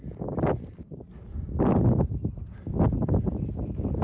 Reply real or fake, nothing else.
real